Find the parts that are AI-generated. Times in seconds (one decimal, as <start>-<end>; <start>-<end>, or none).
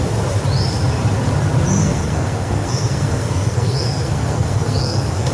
1.8-5.3